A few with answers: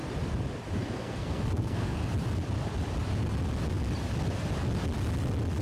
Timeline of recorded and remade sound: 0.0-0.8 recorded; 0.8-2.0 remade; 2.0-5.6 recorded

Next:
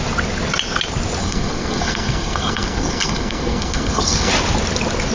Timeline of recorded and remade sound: 0.0-1.2 recorded; 1.2-4.3 remade; 4.3-5.1 recorded

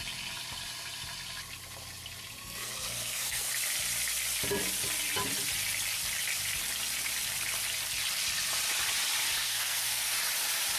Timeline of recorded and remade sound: 0.0-2.4 recorded; 2.4-3.5 remade; 3.5-9.4 recorded; 9.4-10.1 remade; 10.1-10.8 recorded

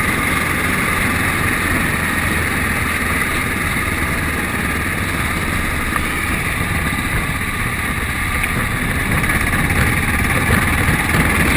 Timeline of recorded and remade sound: 0.0-11.6 recorded

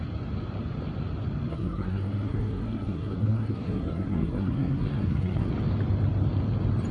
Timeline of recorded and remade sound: 0.0-1.5 recorded; 1.5-5.5 remade; 5.5-6.9 recorded

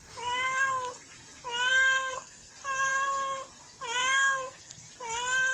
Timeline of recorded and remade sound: 0.0-1.7 recorded; 1.7-2.5 remade; 2.5-4.0 recorded; 4.0-4.9 remade; 4.9-5.5 recorded

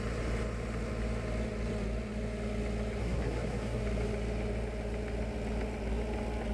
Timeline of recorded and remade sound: 0.0-3.0 recorded; 3.0-3.8 remade; 3.8-6.5 recorded

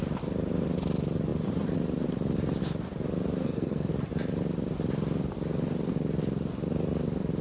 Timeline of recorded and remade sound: 0.0-3.4 recorded; 3.4-3.9 remade; 3.9-7.4 recorded